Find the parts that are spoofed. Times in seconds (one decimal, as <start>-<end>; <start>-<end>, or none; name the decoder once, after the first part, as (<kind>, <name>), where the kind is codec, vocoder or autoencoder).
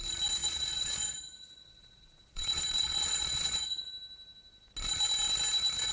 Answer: 0.4-3.9 (vocoder, Vocos)